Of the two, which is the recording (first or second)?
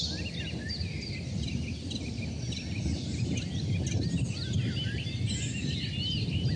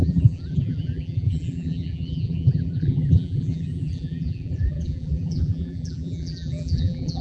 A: first